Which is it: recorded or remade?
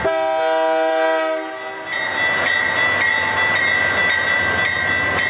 recorded